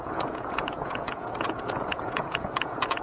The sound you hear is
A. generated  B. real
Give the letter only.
A